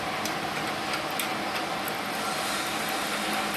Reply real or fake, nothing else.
real